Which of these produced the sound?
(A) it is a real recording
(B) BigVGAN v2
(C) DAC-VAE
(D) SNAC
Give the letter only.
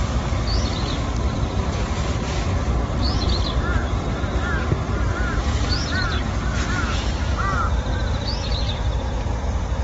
A